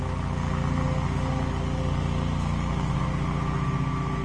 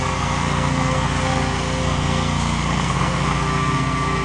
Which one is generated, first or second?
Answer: second